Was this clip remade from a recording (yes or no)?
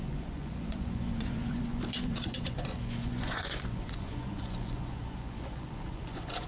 yes